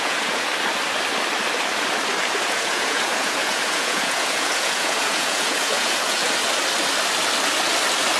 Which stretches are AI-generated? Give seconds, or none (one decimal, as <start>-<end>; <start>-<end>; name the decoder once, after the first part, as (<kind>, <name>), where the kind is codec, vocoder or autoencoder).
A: 0.0-0.5 (vocoder, Vocos); 2.5-6.2